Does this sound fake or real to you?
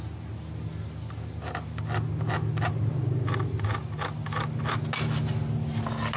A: real